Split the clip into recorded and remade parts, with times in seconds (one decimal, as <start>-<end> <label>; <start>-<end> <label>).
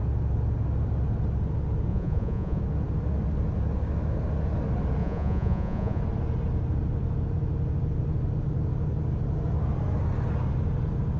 0.0-1.9 recorded; 1.9-2.6 remade; 2.6-5.0 recorded; 5.0-6.0 remade; 6.0-11.2 recorded